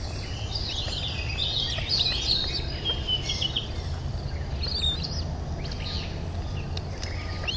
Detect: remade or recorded recorded